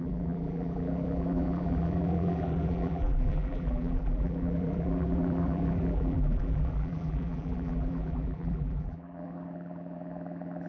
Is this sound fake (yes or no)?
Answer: yes